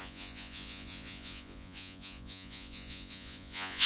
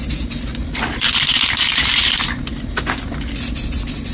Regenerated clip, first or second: first